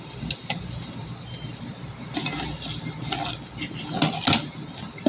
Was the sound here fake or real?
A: real